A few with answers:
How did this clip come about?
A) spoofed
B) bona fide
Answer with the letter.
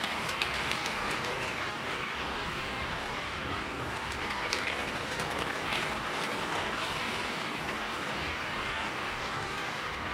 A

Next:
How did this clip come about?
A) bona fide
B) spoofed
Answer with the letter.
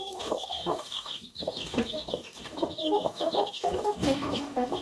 B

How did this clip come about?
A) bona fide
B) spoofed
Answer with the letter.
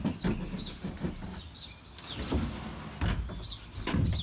A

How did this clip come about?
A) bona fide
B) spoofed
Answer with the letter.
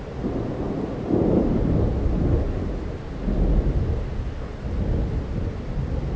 A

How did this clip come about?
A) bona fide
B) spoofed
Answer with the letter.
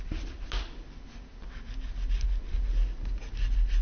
A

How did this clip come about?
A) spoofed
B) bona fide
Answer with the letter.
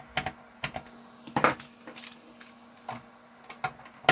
B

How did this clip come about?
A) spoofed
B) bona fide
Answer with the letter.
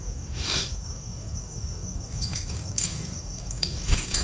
A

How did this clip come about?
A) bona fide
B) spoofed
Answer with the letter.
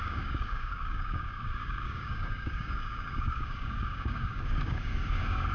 B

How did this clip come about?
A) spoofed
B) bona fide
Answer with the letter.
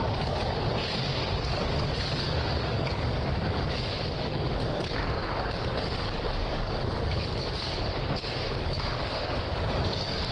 A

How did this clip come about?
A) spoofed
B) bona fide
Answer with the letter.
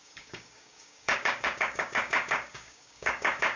A